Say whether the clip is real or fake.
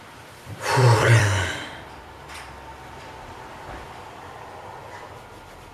fake